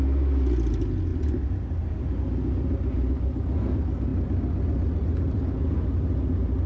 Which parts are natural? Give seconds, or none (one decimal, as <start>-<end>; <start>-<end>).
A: 0.0-6.7